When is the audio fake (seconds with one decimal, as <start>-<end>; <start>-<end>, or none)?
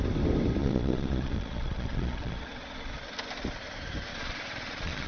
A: 0.6-2.9; 4.1-5.1